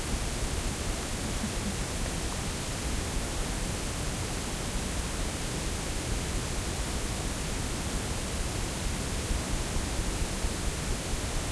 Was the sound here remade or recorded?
recorded